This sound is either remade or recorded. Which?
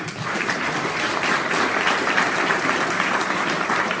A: recorded